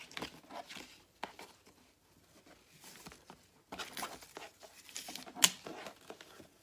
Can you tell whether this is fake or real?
real